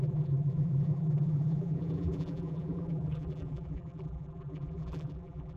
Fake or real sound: fake